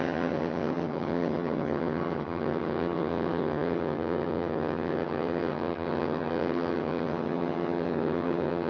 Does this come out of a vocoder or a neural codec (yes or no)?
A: yes